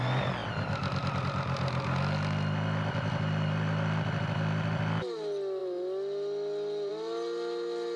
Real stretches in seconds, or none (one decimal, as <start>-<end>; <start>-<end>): 0.0-8.0